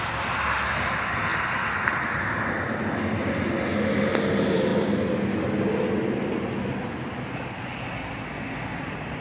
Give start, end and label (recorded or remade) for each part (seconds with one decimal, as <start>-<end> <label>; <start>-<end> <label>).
0.0-9.2 recorded